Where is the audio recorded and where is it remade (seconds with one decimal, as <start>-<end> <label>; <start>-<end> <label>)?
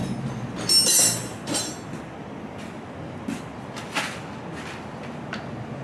0.0-5.8 recorded